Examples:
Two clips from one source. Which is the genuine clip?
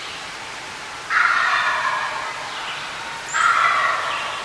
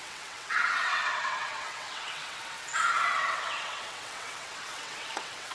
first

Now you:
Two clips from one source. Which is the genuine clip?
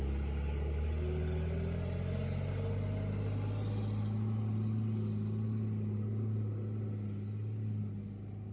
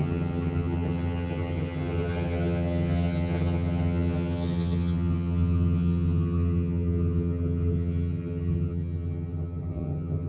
first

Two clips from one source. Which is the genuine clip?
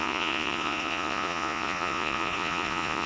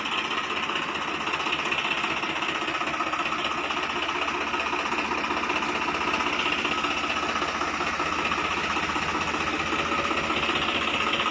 second